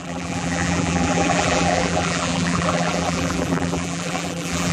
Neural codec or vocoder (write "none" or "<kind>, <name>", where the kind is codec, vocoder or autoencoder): vocoder, BigVGAN v2